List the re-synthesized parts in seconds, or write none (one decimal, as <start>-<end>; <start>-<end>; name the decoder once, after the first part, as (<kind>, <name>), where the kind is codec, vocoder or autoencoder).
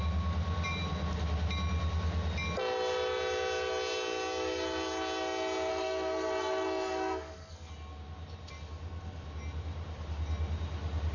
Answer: 5.7-7.7 (codec, SNAC)